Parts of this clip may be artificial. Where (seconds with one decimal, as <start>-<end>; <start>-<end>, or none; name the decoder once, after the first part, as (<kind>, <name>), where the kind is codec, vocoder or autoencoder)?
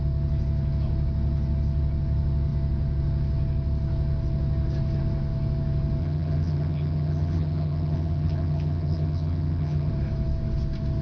6.0-9.9 (vocoder, HiFi-GAN)